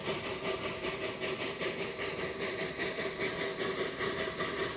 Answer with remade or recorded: recorded